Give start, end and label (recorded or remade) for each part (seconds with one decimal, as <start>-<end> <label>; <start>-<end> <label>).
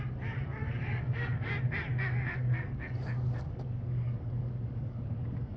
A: 0.0-0.6 recorded; 0.6-1.5 remade; 1.5-1.9 recorded; 1.9-5.6 remade